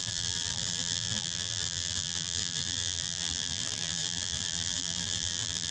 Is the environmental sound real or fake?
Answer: fake